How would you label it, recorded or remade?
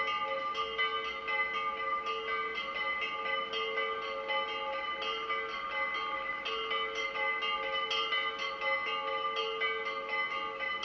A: recorded